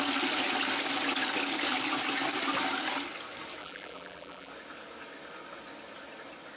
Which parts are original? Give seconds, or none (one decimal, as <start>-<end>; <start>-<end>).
0.0-3.6; 4.5-6.6